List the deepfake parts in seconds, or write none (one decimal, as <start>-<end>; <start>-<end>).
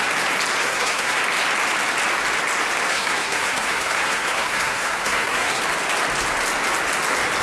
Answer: 0.6-1.2; 2.9-5.6